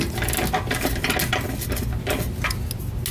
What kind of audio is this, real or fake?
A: real